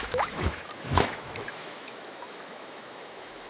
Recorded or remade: remade